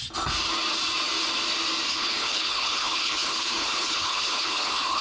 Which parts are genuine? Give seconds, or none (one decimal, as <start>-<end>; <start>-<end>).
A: 0.0-1.9